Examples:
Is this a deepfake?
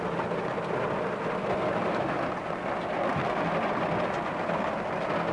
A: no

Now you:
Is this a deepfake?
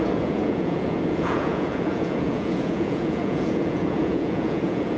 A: yes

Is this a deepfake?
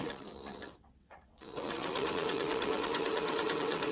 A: yes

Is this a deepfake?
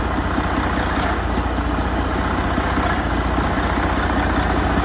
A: no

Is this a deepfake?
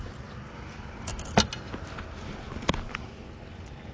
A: no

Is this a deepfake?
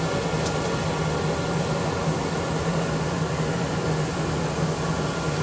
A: no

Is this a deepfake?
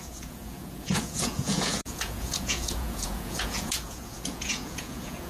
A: yes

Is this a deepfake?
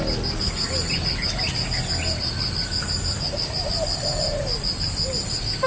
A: no